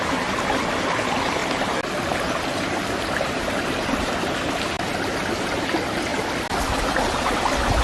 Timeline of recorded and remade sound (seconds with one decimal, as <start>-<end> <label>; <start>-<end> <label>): 0.0-7.8 recorded